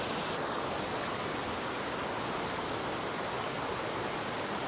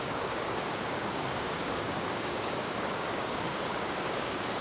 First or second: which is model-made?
second